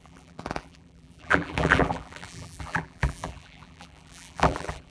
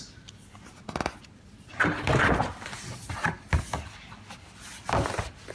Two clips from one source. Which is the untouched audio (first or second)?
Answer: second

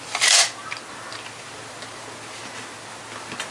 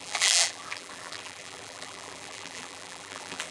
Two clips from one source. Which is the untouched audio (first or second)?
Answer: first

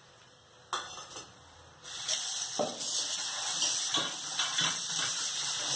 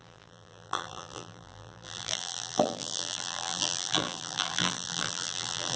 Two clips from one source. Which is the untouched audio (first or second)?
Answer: first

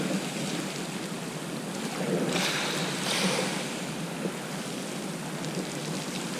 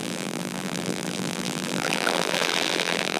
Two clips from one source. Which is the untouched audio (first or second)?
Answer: first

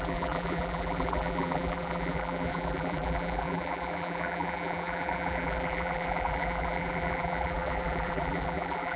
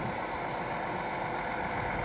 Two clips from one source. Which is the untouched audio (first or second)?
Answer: second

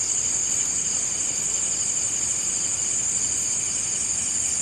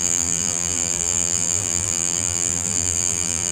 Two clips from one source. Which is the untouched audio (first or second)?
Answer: first